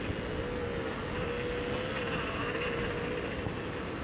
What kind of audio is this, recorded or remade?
recorded